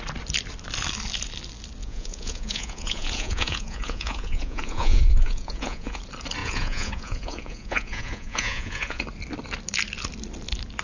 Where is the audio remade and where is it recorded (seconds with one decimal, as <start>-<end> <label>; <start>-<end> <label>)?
0.0-1.8 recorded; 1.8-6.0 remade; 6.0-6.4 recorded; 6.4-9.0 remade; 9.0-10.8 recorded